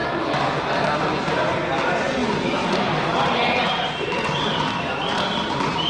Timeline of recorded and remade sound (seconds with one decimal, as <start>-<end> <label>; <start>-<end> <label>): 0.0-2.2 recorded; 2.2-5.9 remade